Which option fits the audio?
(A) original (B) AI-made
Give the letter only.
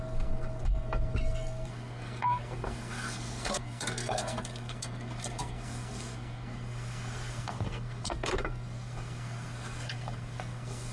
B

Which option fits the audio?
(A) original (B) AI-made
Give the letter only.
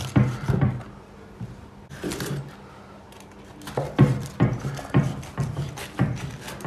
A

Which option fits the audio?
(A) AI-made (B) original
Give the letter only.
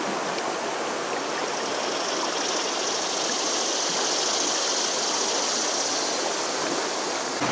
B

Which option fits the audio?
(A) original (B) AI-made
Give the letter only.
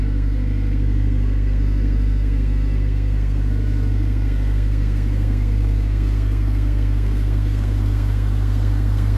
B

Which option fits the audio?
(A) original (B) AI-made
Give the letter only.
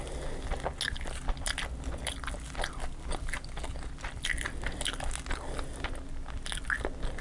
A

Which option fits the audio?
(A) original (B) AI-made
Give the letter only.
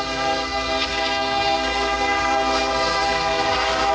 B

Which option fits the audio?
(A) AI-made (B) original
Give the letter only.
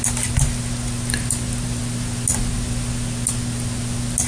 B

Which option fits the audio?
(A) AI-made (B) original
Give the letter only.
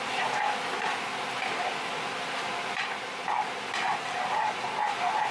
B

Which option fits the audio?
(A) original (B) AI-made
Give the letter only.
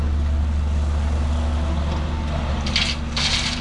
A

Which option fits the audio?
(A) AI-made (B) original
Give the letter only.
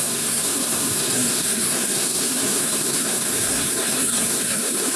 A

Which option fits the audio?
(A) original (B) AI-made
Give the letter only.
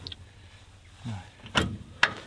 A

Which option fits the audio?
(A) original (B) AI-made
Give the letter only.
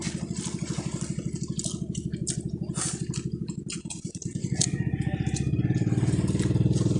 A